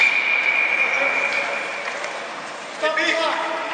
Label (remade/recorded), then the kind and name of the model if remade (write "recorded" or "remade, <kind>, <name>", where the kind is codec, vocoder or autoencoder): recorded